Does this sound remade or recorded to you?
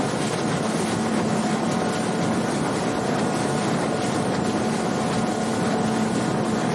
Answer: recorded